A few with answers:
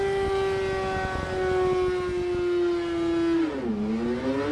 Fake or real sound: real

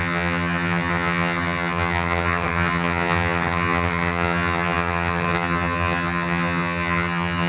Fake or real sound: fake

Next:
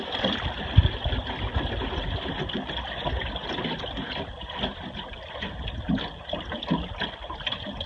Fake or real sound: real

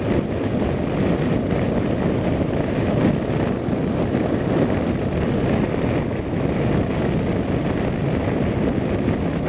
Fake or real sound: real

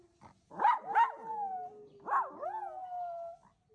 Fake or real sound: real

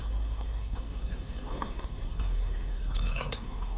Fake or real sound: fake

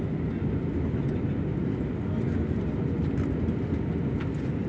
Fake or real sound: real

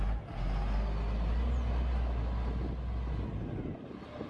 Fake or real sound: real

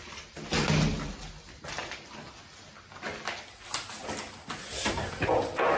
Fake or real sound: real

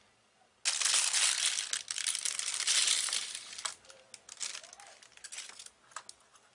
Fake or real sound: real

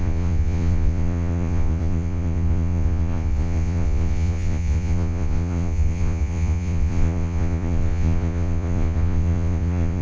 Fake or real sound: fake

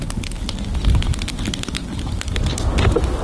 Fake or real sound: real